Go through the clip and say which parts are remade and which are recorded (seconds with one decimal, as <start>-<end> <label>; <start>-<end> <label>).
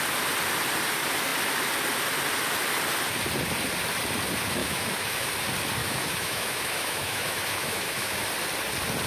0.0-4.6 recorded; 4.6-5.3 remade; 5.3-5.8 recorded; 5.8-8.2 remade; 8.2-9.1 recorded